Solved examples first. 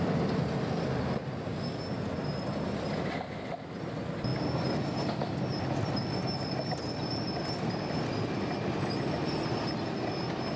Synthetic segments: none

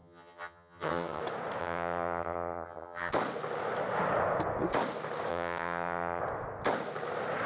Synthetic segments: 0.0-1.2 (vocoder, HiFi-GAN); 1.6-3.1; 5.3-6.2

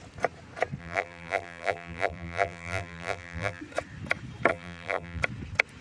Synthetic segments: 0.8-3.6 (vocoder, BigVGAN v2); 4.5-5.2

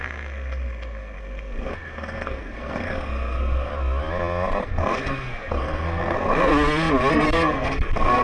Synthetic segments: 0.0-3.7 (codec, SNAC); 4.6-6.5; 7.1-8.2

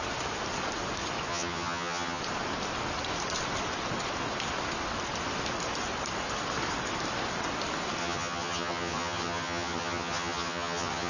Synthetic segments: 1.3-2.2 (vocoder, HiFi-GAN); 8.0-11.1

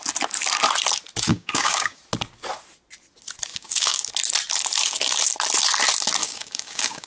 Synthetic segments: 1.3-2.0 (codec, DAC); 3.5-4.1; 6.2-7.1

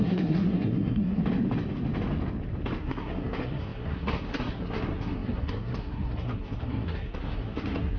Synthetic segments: 0.0-1.2 (codec, SNAC); 2.8-8.0

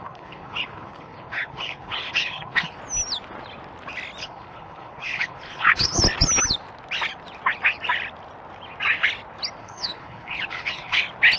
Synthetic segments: 0.0-2.8 (codec, HILCodec); 4.2-6.0; 9.6-11.0